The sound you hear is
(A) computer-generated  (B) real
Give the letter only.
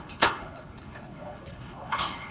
A